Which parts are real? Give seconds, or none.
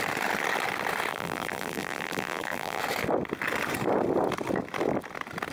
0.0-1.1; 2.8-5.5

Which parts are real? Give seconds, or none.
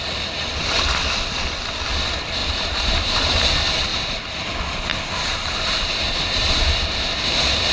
0.0-2.4; 3.4-3.9; 4.5-4.9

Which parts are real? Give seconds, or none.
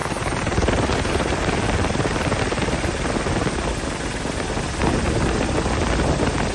1.3-6.5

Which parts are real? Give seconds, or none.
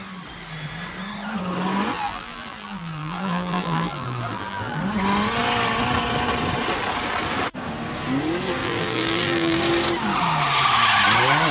0.0-1.9; 4.8-8.6; 9.6-11.5